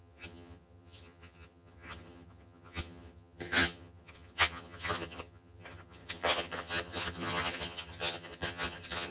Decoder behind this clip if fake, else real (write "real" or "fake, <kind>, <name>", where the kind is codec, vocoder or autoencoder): fake, vocoder, HiFi-GAN